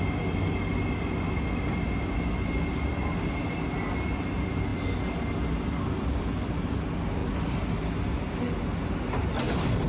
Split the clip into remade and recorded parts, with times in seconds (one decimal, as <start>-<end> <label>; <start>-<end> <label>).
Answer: 0.0-7.2 recorded; 7.2-7.9 remade; 7.9-9.9 recorded